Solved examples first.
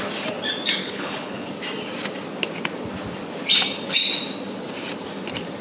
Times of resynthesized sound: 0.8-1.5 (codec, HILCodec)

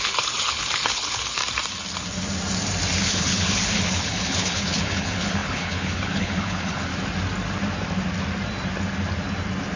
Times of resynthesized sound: 0.0-1.4 (codec, HILCodec); 3.0-6.9

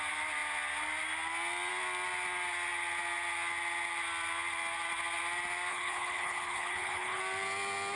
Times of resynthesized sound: 5.7-7.2 (codec, HILCodec)

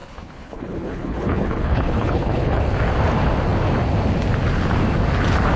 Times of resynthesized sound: 0.0-2.6 (codec, HILCodec)

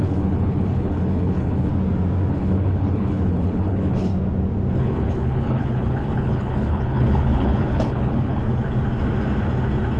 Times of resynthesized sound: 0.0-1.7 (codec, HILCodec); 2.3-4.1; 4.8-8.4

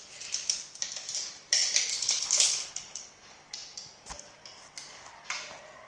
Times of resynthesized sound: 1.9-3.0 (codec, HILCodec)

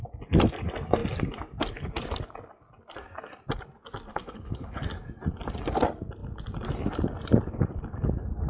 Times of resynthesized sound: 4.1-4.8 (codec, HILCodec)